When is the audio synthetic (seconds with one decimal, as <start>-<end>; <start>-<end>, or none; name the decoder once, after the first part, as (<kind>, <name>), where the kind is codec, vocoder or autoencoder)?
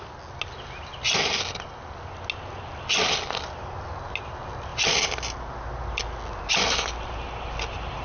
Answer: none